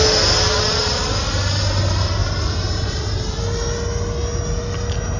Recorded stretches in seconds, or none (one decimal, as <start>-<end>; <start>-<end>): 0.0-2.2; 3.4-5.2